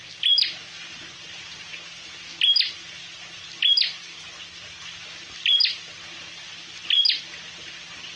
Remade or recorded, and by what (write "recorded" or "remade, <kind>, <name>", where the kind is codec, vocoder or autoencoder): recorded